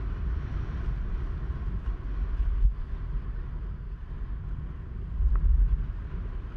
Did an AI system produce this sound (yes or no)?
no